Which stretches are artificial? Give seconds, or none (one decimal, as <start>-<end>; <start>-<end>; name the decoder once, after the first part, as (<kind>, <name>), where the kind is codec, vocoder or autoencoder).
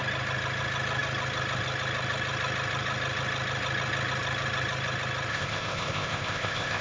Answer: 5.3-6.8 (codec, ZipCodec)